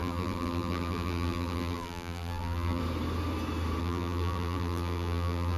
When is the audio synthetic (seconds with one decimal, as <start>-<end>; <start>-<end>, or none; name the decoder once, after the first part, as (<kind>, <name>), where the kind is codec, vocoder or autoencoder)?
0.0-2.8 (vocoder, BigVGAN v2); 3.8-5.6